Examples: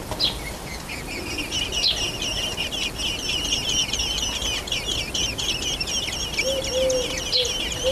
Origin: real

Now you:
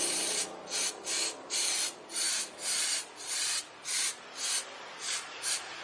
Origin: fake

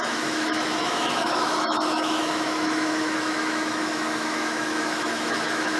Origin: fake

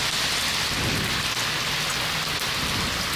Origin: real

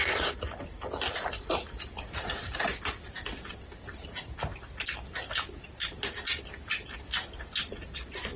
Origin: real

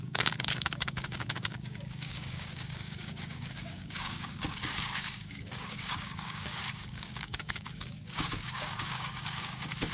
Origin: fake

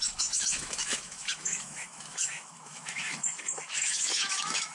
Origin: fake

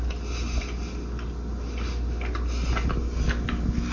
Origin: real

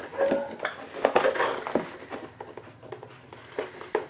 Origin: real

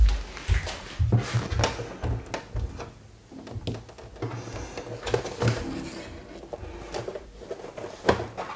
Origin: real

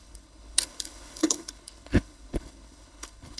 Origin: fake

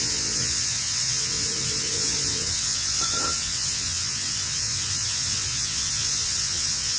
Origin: fake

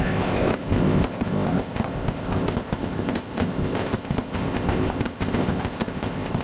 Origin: fake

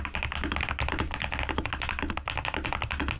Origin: real